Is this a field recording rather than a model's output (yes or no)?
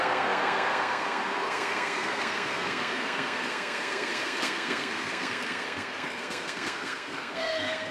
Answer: no